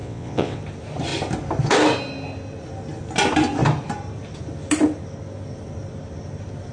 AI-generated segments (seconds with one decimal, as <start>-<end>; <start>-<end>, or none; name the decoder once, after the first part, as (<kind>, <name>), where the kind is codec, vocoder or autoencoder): 0.0-0.6 (vocoder, WaveNeXt)

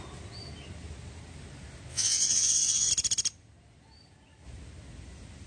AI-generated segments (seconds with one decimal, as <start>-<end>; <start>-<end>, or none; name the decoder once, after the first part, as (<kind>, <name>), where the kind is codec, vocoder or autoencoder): 1.9-2.9 (vocoder, WaveNeXt)

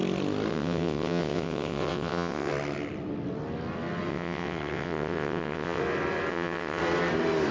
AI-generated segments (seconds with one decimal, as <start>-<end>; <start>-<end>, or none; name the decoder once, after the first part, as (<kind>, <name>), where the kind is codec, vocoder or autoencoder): 0.5-2.5 (vocoder, WaveNeXt); 4.1-5.8; 6.3-6.8